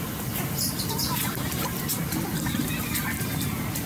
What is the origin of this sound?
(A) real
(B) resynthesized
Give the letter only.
A